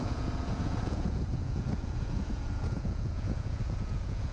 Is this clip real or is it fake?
fake